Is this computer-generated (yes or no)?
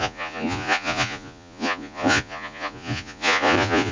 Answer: yes